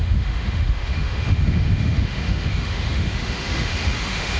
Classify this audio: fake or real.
fake